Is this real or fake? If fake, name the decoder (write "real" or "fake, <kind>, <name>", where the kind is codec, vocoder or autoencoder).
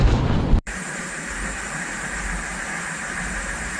fake, vocoder, BigVGAN v2